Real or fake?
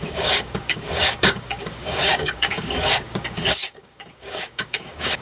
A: fake